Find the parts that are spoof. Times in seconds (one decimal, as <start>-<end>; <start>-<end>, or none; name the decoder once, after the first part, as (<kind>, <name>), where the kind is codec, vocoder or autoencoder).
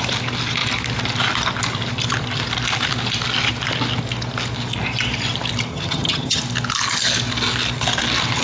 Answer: 5.7-6.4 (vocoder, HiFi-GAN)